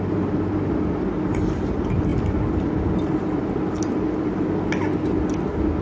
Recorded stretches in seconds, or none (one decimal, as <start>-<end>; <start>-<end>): 0.0-5.8